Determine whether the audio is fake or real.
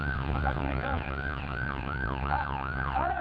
fake